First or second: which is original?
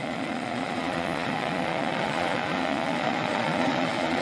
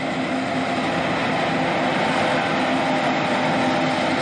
second